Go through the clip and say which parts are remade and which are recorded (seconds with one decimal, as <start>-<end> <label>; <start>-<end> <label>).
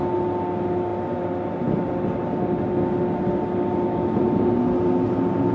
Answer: 0.0-5.5 recorded